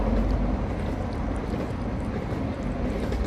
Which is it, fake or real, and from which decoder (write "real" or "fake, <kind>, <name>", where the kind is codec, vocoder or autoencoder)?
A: real